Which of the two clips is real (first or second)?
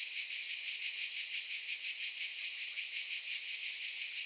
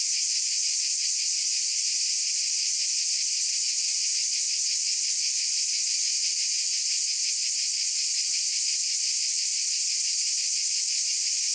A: second